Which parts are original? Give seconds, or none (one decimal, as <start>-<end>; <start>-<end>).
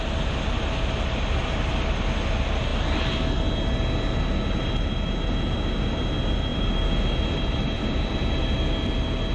0.0-6.5; 8.4-9.3